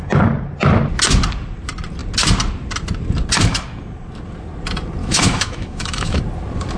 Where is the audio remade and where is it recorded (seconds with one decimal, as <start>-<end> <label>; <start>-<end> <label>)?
0.0-5.0 recorded; 5.0-6.2 remade; 6.2-6.8 recorded